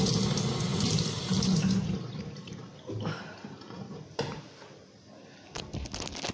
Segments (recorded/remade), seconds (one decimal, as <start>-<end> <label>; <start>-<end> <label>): 0.0-0.7 recorded; 0.7-4.5 remade; 4.5-6.3 recorded